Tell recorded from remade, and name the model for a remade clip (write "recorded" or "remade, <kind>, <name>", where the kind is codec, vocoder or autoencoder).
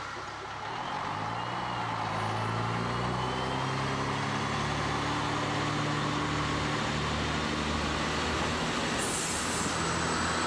recorded